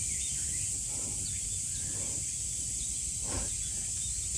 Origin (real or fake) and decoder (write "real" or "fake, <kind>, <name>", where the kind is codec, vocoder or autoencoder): real